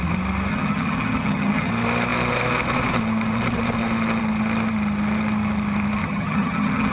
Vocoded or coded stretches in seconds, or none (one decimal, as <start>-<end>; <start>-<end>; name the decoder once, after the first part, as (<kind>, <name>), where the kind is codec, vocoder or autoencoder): 0.5-1.7 (vocoder, HiFi-GAN); 6.0-6.9